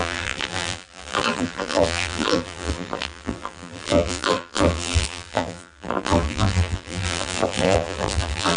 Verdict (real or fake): fake